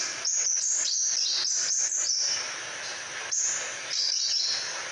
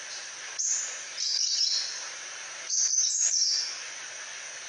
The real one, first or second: first